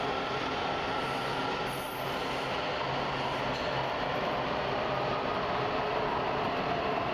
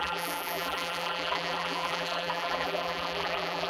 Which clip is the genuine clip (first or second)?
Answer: first